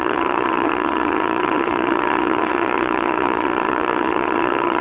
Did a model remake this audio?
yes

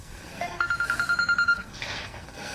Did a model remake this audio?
yes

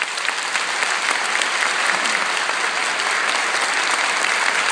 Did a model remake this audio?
no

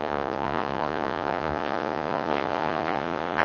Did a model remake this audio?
yes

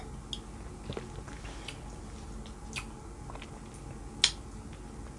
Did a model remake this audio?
no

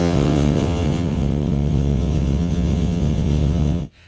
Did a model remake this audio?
yes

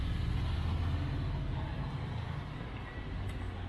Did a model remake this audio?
no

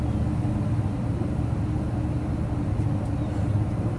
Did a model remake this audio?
no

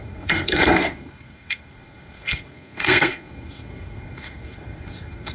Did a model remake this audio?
yes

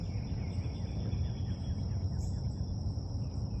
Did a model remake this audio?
yes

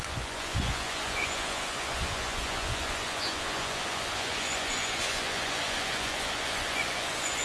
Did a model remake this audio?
yes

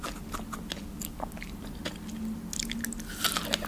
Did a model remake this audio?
no